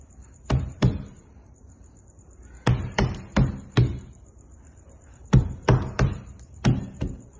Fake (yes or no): yes